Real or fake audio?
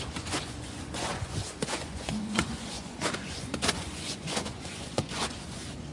fake